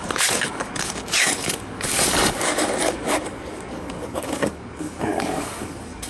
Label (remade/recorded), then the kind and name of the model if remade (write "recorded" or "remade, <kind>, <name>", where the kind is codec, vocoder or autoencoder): remade, codec, DAC